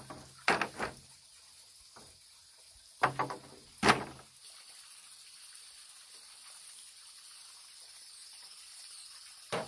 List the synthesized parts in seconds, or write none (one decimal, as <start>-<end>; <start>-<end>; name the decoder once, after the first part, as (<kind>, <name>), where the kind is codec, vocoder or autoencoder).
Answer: none